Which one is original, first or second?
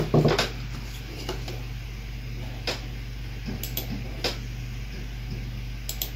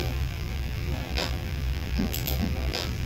first